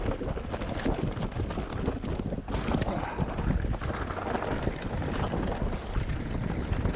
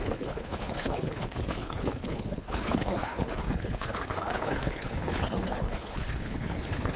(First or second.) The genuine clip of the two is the first